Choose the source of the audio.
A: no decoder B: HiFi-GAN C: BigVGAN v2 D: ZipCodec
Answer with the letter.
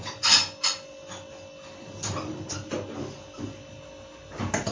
A